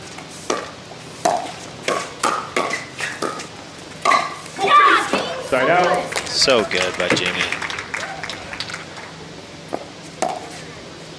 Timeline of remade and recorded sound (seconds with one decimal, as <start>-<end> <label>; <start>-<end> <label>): 0.0-11.2 recorded